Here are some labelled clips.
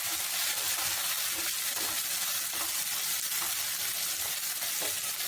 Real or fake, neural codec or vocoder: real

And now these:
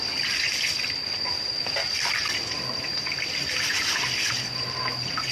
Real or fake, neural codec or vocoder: fake, vocoder, BigVGAN v2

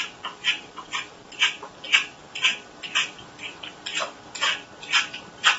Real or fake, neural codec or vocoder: real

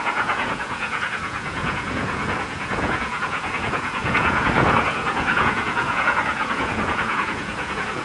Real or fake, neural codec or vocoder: fake, vocoder, Vocos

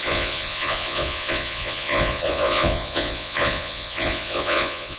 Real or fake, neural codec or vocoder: fake, vocoder, Vocos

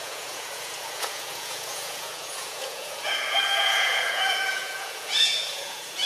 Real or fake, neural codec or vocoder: fake, vocoder, Vocos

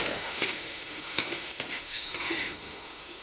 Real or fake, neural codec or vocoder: fake, autoencoder, DAC-VAE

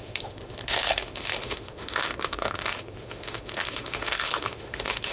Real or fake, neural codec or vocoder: fake, autoencoder, DAC-VAE